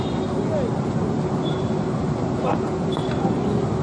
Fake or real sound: real